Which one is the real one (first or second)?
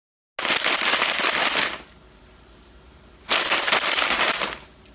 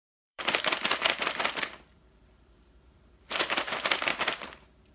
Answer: first